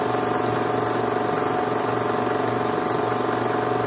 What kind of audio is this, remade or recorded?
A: recorded